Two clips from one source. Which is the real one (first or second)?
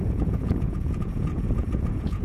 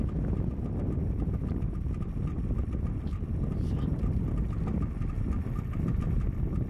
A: second